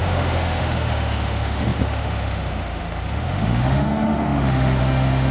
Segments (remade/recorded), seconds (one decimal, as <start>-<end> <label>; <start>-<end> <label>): 0.0-5.3 remade